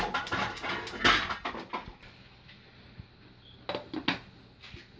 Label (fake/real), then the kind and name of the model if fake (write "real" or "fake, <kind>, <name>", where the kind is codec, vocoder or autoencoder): real